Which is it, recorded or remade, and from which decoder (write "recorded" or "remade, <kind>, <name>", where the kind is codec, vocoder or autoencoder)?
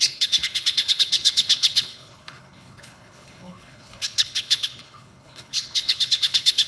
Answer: remade, codec, HILCodec